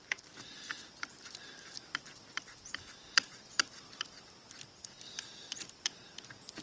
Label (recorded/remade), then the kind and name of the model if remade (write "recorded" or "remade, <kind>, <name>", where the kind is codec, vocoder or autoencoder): remade, vocoder, BigVGAN v2